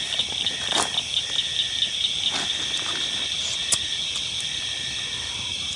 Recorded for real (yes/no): yes